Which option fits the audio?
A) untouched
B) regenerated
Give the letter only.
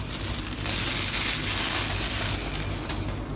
A